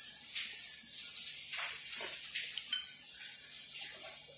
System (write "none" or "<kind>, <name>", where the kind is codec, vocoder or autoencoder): none